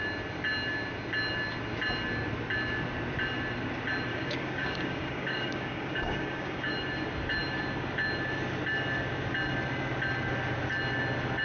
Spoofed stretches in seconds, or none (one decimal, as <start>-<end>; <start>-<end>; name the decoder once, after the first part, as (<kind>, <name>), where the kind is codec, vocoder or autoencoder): 4.1-6.7 (codec, DAC)